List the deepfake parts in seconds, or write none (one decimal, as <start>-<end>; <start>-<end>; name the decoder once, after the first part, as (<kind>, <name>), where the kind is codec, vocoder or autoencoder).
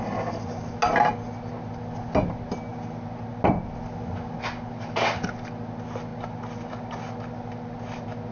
2.7-3.3 (vocoder, BigVGAN v2)